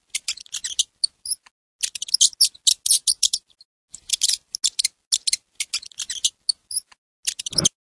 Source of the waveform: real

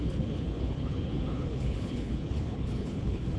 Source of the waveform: fake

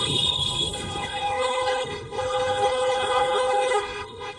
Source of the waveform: fake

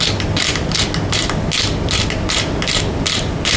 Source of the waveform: real